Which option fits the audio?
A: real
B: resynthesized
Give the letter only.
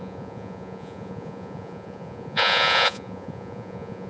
B